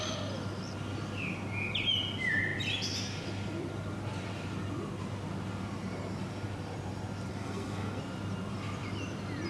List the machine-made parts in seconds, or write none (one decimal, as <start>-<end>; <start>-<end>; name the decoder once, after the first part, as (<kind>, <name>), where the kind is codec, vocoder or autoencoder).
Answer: 7.3-8.0 (codec, SNAC)